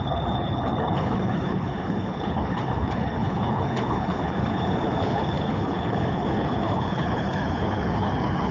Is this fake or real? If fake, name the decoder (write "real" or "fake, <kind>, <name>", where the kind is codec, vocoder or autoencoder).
fake, codec, HILCodec